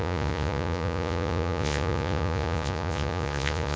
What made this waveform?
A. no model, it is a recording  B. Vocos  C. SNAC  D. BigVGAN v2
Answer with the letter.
B